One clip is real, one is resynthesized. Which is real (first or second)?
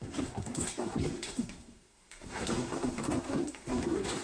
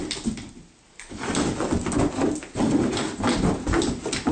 second